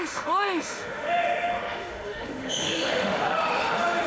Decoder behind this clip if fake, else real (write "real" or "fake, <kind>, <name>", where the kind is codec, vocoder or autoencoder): fake, autoencoder, DAC-VAE